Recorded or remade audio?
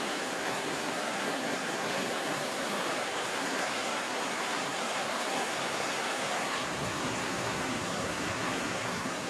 remade